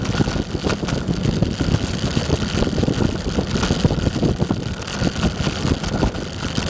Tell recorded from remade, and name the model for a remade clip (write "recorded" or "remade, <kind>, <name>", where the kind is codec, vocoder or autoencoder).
recorded